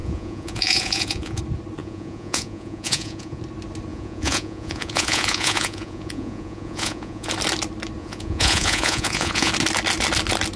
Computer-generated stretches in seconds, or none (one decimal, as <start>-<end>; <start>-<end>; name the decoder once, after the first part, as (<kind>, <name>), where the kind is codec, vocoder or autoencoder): 0.0-1.4 (vocoder, Vocos); 1.8-3.4; 3.9-7.3; 8.0-9.5